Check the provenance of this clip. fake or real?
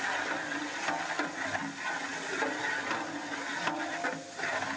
real